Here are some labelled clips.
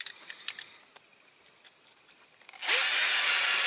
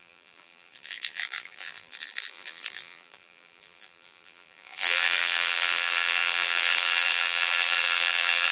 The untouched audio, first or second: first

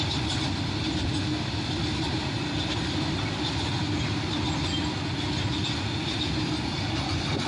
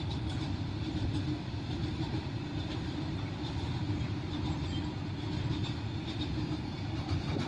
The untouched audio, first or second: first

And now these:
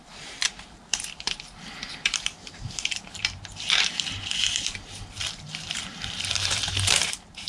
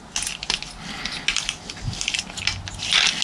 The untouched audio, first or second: second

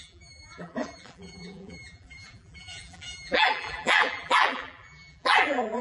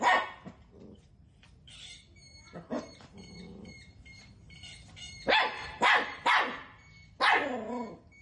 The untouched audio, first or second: second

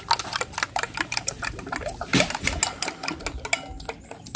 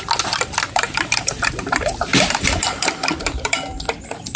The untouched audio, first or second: first